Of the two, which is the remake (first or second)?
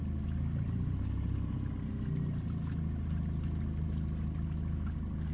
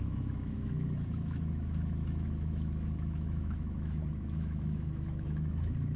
second